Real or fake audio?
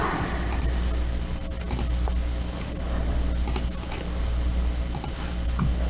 real